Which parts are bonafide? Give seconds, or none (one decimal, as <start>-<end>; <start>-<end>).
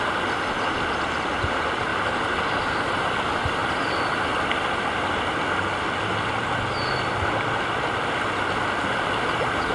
0.0-1.9; 3.2-3.6; 4.4-9.7